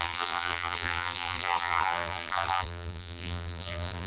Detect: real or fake fake